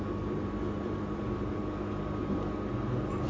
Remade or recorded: recorded